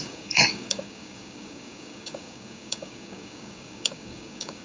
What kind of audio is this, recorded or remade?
remade